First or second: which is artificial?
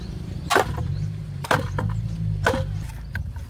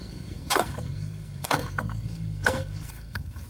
second